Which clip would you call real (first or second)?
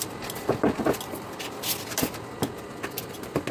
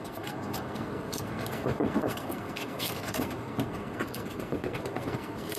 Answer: first